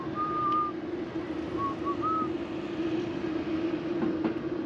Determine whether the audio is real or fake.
real